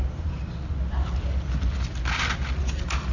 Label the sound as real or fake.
real